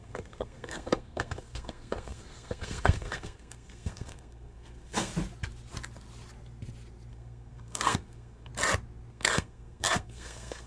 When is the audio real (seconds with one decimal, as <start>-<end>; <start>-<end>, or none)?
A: 5.1-7.1; 8.5-9.1

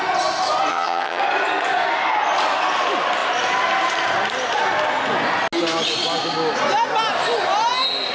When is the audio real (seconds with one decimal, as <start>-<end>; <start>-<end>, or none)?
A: 0.0-0.7; 1.2-8.1

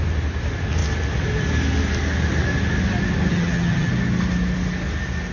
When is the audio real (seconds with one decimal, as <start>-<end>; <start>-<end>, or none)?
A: 0.0-3.3; 3.9-5.3

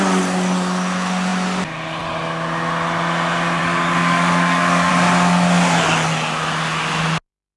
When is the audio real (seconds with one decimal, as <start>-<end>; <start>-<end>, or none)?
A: 0.0-3.6; 4.9-7.6

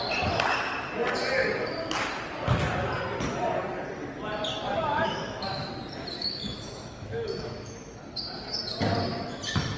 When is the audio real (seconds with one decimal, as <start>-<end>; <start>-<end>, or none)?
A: 0.0-4.7; 5.7-6.2; 7.9-9.8

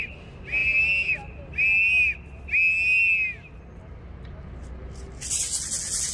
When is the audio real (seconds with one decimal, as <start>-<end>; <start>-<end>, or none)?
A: 0.0-6.1

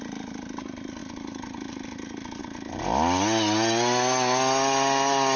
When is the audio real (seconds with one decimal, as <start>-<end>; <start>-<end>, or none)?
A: 0.0-5.4